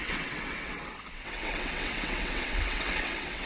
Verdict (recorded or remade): remade